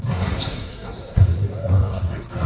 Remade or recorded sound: remade